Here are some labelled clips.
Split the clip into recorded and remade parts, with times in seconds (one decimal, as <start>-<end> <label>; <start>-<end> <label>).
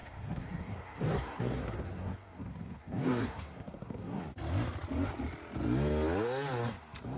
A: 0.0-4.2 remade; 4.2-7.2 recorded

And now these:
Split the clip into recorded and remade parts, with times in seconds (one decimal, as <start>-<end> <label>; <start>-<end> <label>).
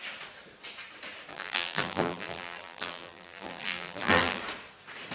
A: 0.0-1.3 recorded; 1.3-4.4 remade; 4.4-5.1 recorded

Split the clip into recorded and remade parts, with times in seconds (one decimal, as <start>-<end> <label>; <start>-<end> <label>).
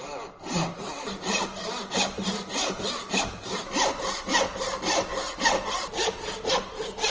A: 0.0-7.1 recorded